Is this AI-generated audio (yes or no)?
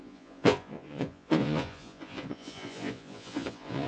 yes